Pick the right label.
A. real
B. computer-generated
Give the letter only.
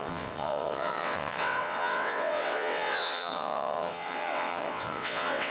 B